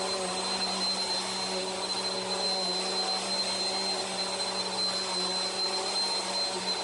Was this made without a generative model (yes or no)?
yes